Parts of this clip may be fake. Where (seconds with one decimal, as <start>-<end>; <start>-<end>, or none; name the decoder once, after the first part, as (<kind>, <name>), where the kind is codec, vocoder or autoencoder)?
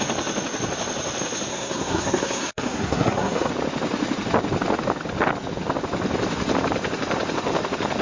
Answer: 1.5-3.5 (codec, SNAC)